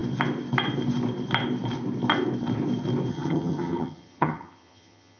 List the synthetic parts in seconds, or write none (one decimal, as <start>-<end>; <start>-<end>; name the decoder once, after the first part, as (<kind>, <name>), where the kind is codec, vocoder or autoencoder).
3.1-5.2 (vocoder, HiFi-GAN)